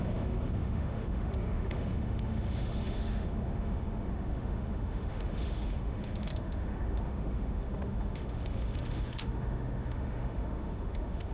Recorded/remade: remade